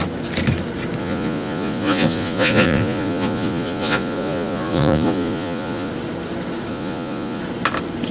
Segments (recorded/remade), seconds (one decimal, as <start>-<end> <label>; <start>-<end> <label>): 0.0-1.0 recorded; 1.0-5.9 remade; 5.9-6.7 recorded; 6.7-7.4 remade; 7.4-8.1 recorded